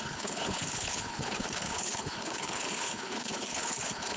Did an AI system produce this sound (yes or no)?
yes